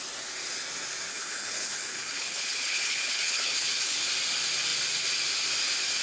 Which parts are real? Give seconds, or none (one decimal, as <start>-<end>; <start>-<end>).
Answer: 0.0-1.1; 4.1-6.0